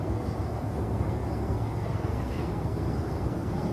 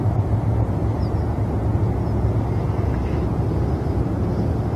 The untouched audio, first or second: second